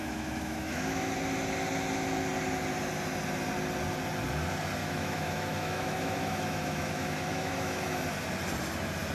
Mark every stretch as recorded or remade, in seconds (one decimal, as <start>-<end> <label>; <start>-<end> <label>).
0.0-1.1 remade; 1.1-4.8 recorded; 4.8-8.0 remade; 8.0-9.1 recorded